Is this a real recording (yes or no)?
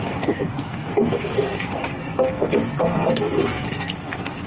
no